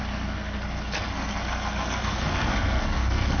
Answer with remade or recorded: remade